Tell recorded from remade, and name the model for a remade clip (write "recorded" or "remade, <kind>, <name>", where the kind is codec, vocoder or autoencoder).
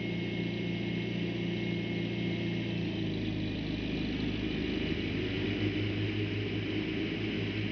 recorded